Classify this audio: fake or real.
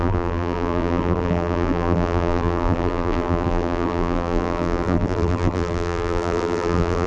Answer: fake